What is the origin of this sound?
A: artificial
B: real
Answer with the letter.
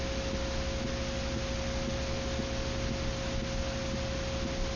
B